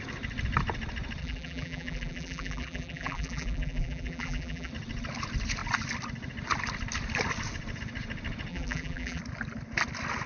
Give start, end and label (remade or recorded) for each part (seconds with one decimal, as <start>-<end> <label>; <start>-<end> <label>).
0.0-1.2 recorded; 1.2-4.7 remade; 4.7-8.5 recorded; 8.5-9.2 remade; 9.2-10.3 recorded